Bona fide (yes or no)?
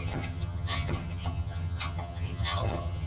no